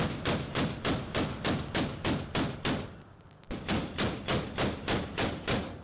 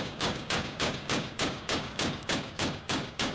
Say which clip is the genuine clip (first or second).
first